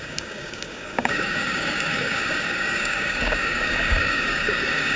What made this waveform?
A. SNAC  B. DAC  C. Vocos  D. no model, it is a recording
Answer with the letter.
B